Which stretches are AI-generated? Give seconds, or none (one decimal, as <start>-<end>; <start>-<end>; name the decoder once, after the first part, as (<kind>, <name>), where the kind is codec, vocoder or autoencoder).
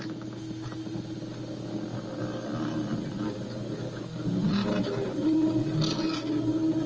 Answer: none